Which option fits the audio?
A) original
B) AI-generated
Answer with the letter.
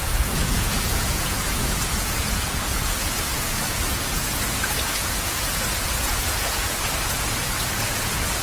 B